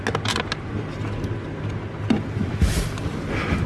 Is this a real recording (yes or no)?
yes